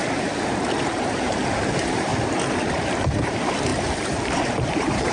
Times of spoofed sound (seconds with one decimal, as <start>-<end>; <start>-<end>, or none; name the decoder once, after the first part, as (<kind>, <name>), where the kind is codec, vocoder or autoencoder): 0.0-2.1 (vocoder, BigVGAN v2); 3.0-5.1